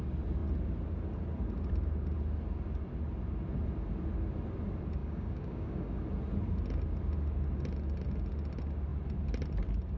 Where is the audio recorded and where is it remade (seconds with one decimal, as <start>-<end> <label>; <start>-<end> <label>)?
0.0-5.0 recorded; 5.0-6.0 remade; 6.0-10.0 recorded